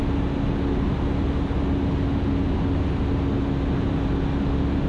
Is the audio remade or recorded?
recorded